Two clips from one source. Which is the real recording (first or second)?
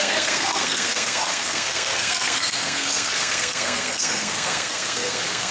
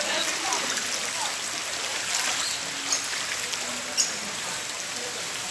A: second